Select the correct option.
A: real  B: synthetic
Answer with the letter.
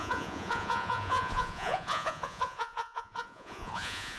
B